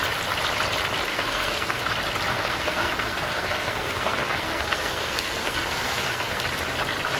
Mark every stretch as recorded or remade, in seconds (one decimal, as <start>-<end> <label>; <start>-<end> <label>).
0.0-1.1 recorded; 1.1-1.8 remade; 1.8-2.3 recorded; 2.3-6.4 remade; 6.4-7.2 recorded